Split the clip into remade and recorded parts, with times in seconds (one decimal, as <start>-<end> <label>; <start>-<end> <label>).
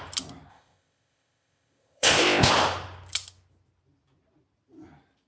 0.0-0.5 recorded; 0.5-2.5 remade; 2.5-5.3 recorded